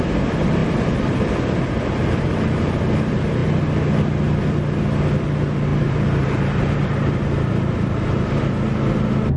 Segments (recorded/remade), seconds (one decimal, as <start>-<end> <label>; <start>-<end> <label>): 0.0-0.6 recorded; 0.6-2.8 remade; 2.8-5.7 recorded; 5.7-7.2 remade; 7.2-9.4 recorded